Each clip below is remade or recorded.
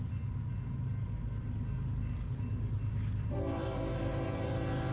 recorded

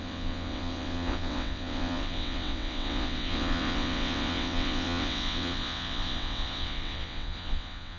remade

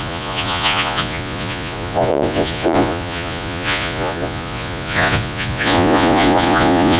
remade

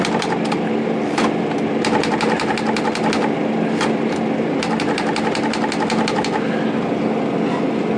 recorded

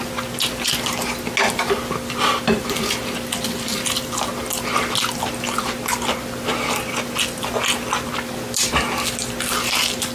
recorded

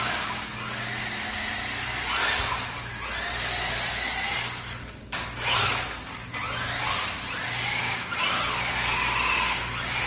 recorded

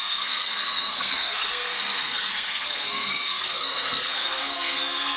remade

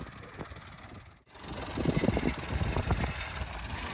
recorded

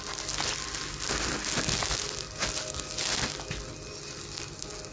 recorded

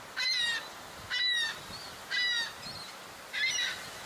recorded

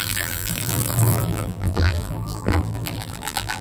remade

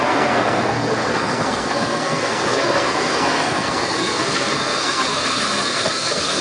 remade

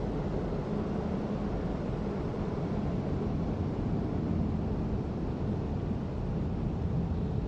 recorded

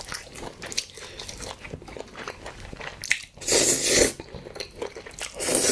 recorded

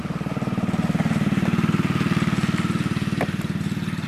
recorded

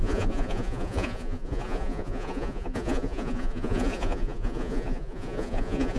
remade